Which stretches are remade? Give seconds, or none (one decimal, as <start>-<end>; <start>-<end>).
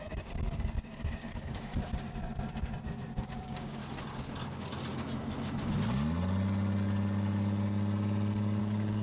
0.0-1.7; 3.2-3.8; 8.6-9.0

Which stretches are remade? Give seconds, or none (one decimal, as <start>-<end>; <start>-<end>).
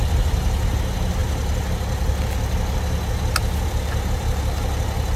none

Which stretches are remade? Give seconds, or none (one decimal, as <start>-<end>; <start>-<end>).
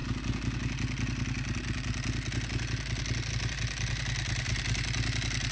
none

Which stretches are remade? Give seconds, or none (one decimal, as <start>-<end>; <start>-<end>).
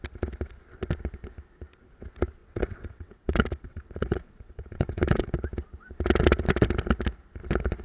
2.4-5.3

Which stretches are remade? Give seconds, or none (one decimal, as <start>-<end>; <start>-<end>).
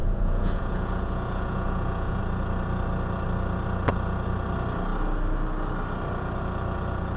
0.0-2.2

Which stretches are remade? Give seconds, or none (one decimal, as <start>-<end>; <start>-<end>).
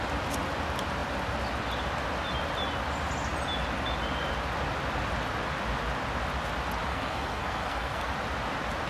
6.9-8.1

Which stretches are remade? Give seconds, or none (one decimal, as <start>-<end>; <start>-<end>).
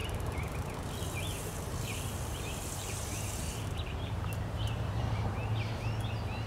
0.0-5.4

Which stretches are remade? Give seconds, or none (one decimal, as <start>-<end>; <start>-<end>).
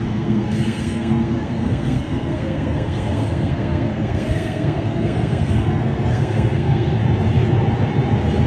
0.0-7.0